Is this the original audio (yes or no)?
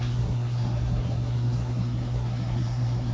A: no